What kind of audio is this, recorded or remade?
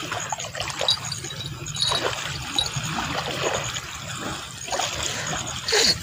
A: recorded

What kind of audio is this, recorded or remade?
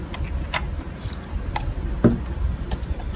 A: recorded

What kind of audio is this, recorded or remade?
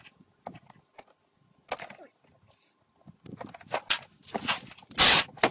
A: recorded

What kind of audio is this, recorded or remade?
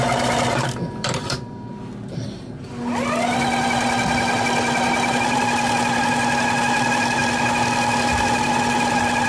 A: recorded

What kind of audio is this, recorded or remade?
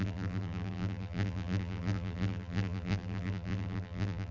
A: remade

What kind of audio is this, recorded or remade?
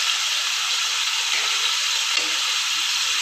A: recorded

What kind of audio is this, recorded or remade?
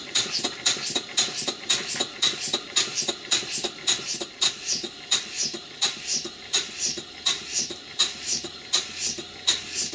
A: remade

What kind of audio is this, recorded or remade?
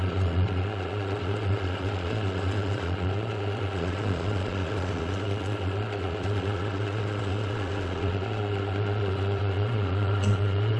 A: remade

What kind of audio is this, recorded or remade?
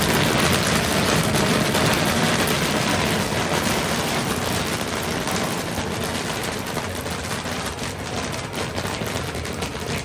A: recorded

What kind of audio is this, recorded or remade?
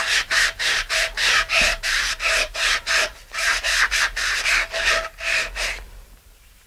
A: remade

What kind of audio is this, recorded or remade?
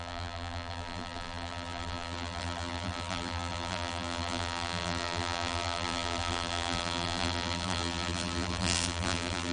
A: remade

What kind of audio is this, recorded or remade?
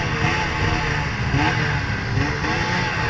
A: recorded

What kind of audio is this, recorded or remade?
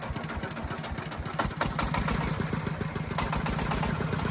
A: recorded